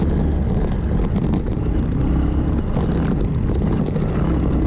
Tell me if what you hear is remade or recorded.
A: recorded